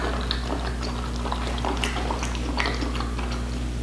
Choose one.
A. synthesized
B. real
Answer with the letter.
B